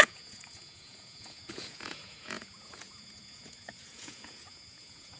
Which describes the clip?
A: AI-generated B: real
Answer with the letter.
A